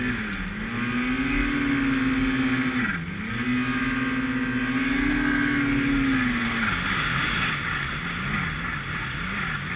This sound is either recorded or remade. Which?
recorded